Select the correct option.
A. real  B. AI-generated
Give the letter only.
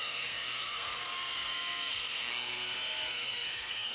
B